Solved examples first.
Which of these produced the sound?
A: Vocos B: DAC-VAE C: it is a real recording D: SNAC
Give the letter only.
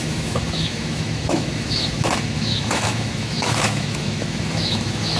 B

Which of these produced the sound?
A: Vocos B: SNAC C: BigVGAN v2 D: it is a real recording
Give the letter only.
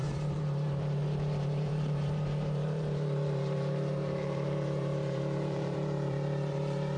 C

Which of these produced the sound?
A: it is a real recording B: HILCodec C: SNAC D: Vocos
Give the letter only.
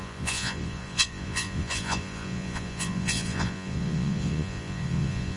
D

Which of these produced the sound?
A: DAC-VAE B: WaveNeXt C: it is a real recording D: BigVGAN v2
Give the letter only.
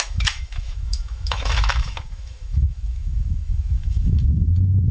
A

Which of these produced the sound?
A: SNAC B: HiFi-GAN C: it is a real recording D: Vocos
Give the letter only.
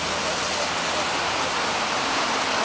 C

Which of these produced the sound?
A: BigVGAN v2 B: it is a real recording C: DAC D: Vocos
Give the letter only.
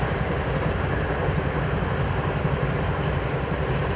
B